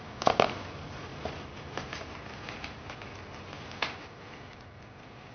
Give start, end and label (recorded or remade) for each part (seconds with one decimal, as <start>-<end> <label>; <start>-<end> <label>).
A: 0.0-5.3 recorded